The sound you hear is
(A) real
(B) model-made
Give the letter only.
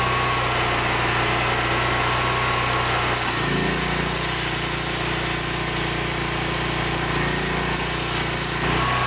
A